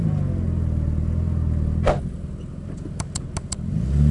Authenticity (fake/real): real